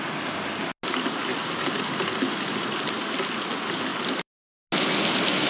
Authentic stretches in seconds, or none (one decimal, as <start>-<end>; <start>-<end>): 0.0-5.5